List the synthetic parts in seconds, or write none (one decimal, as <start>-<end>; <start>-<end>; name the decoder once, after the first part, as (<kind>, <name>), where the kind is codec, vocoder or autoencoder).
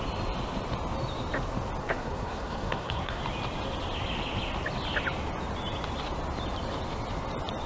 1.8-3.2 (codec, SNAC)